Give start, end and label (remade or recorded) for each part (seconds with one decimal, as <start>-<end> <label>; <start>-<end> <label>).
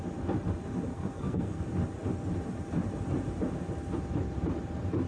0.0-0.9 recorded; 0.9-1.6 remade; 1.6-5.1 recorded